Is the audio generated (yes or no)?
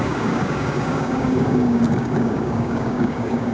yes